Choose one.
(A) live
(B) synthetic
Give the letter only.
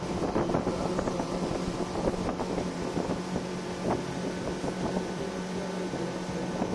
A